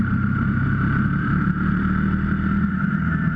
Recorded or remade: remade